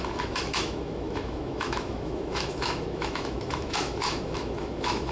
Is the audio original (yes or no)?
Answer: no